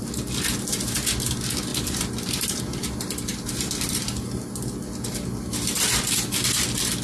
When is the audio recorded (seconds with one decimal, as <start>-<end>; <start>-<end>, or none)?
0.0-1.7; 2.6-3.3; 4.8-7.0